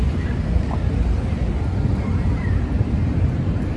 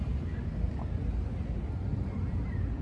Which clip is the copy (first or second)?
first